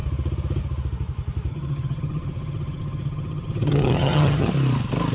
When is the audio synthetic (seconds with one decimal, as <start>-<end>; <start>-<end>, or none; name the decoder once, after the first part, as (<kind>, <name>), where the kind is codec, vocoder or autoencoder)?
1.5-4.5 (vocoder, HiFi-GAN)